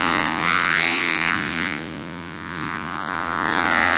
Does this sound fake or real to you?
fake